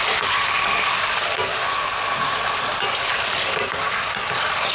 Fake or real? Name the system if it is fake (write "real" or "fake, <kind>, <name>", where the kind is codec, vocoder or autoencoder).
real